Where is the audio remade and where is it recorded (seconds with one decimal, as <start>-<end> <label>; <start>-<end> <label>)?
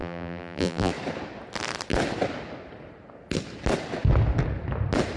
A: 0.0-0.9 remade; 0.9-5.2 recorded